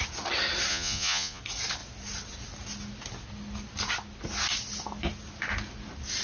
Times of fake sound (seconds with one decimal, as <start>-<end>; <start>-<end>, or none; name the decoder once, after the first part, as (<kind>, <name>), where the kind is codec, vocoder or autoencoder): 0.7-1.4 (vocoder, Vocos)